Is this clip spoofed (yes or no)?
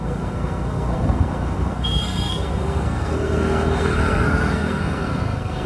yes